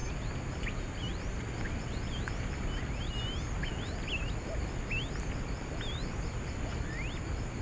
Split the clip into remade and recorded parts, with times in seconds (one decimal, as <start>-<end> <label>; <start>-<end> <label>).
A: 0.0-7.6 recorded